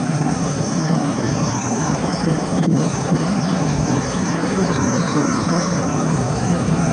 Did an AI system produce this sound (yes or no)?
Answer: yes